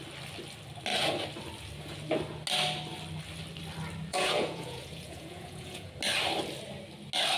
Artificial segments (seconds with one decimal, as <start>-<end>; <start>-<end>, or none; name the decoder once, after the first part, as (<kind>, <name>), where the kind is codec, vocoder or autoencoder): 4.1-5.9 (vocoder, Vocos)